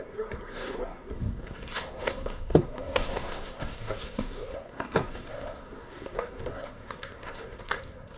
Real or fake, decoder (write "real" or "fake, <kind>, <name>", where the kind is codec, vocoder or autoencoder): fake, codec, SNAC